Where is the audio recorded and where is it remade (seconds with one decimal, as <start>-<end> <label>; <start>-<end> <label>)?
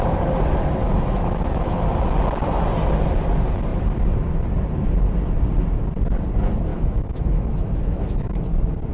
0.0-0.8 recorded; 0.8-1.7 remade; 1.7-6.7 recorded; 6.7-8.4 remade; 8.4-8.9 recorded